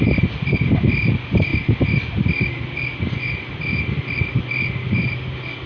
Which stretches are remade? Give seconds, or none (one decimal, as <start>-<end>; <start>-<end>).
none